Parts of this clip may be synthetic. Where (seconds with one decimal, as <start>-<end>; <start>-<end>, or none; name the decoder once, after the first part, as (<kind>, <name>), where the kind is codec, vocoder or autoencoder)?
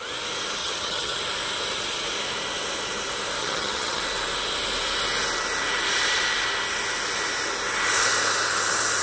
0.6-1.2 (vocoder, HiFi-GAN); 3.4-4.0